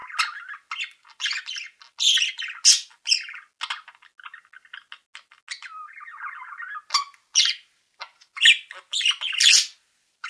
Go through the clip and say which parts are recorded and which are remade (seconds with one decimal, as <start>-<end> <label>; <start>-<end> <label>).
0.0-10.3 recorded